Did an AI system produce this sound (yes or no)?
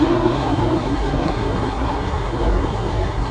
yes